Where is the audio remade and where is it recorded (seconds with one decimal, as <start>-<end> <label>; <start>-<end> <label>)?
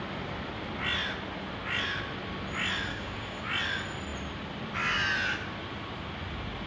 0.0-2.9 recorded; 2.9-3.4 remade; 3.4-6.7 recorded